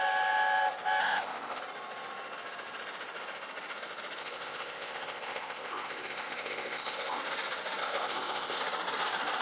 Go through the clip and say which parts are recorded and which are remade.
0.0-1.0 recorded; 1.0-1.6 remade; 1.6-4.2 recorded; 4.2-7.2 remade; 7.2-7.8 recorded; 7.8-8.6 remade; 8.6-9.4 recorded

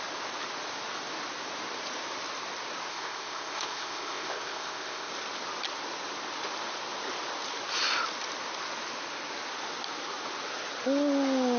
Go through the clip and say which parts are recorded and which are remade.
0.0-2.9 recorded; 2.9-5.1 remade; 5.1-11.6 recorded

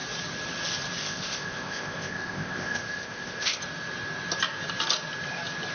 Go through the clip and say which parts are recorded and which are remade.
0.0-1.0 recorded; 1.0-3.6 remade; 3.6-5.7 recorded

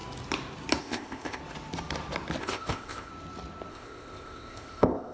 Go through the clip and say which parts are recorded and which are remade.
0.0-0.8 recorded; 0.8-1.4 remade; 1.4-2.4 recorded; 2.4-3.1 remade; 3.1-3.7 recorded; 3.7-5.1 remade

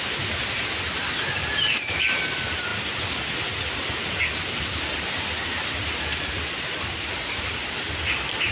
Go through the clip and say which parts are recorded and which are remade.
0.0-8.5 recorded